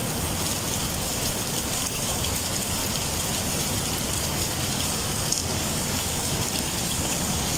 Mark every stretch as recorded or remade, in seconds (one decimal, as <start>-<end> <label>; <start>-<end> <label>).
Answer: 0.0-1.3 recorded; 1.3-2.8 remade; 2.8-4.2 recorded; 4.2-7.6 remade